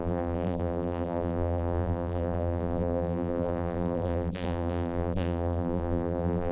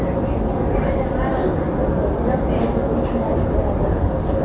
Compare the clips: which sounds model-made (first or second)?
first